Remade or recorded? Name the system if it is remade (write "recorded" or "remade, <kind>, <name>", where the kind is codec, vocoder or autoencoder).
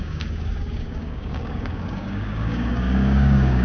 remade, codec, DAC